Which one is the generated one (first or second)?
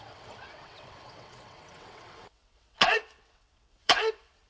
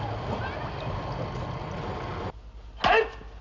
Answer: first